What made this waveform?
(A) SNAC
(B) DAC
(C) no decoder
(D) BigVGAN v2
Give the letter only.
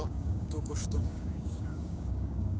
B